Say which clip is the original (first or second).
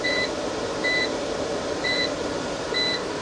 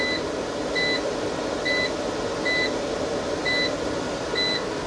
second